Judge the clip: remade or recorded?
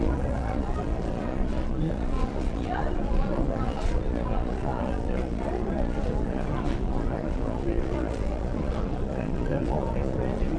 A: remade